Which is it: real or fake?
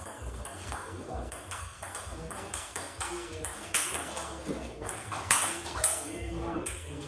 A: fake